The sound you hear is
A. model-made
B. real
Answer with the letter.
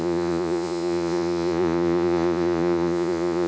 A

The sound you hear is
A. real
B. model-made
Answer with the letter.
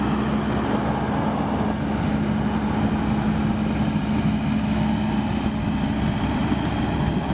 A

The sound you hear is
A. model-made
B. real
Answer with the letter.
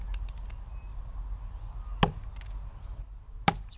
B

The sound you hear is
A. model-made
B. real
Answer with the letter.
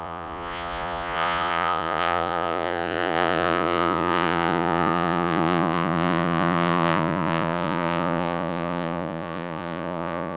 A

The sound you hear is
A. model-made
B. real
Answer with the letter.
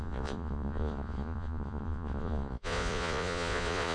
A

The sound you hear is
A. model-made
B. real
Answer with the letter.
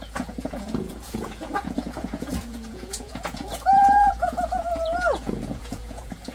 A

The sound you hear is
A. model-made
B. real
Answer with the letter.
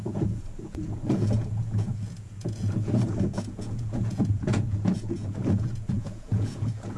A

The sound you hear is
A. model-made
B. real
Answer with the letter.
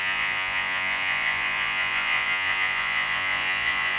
A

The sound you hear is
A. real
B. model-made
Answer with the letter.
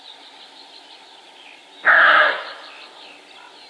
A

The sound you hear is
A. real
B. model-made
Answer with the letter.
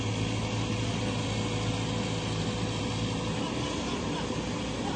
A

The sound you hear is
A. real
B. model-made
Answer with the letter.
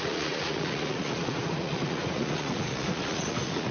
B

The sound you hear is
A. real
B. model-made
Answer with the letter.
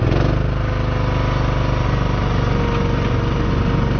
A